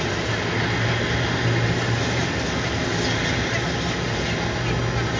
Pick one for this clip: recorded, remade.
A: recorded